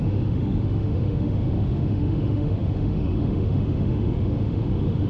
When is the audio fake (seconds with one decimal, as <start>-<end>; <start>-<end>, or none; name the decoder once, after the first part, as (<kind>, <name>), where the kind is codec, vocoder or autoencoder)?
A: 0.0-5.1 (autoencoder, DAC-VAE)